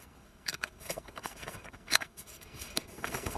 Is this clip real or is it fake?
fake